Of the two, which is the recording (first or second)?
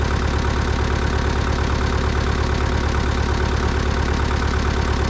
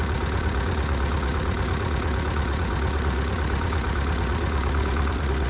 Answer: first